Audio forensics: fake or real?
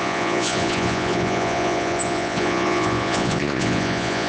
fake